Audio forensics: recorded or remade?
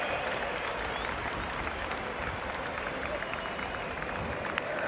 recorded